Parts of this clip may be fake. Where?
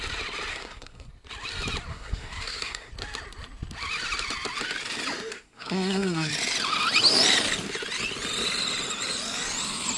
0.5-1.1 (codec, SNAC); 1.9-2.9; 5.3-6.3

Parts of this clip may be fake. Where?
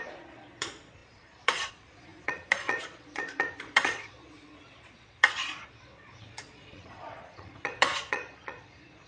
0.0-9.1 (vocoder, Vocos)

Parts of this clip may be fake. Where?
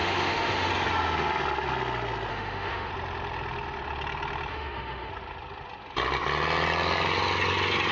0.0-0.7 (autoencoder, DAC-VAE); 2.3-2.9; 4.5-5.1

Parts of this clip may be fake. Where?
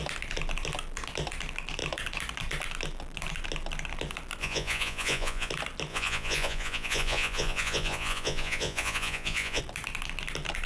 4.4-5.5 (vocoder, Vocos); 5.9-9.6